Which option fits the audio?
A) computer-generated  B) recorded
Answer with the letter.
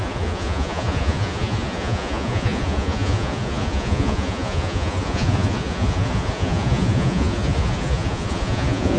A